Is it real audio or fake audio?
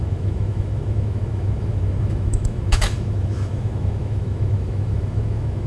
fake